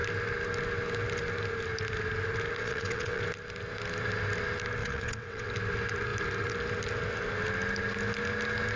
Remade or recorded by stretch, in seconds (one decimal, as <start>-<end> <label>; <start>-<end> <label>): 0.0-2.6 recorded; 2.6-3.2 remade; 3.2-4.8 recorded; 4.8-5.5 remade; 5.5-8.8 recorded